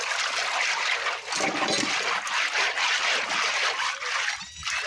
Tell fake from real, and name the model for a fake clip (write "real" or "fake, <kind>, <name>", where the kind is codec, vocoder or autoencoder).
real